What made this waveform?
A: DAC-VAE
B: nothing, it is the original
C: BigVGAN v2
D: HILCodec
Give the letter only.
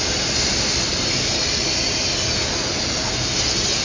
B